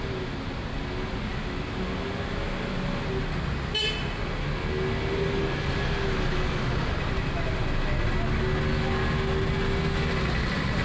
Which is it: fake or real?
real